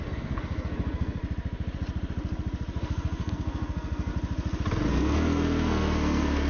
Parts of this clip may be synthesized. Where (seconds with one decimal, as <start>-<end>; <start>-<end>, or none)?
0.0-1.2; 2.8-4.1; 4.9-6.5